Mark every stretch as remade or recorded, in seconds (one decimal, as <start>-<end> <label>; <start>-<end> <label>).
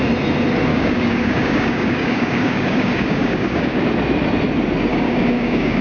0.0-0.7 recorded; 0.7-3.8 remade; 3.8-4.9 recorded; 4.9-5.8 remade